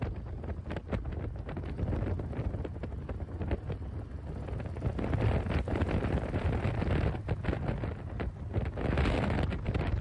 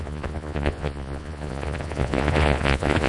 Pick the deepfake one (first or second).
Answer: second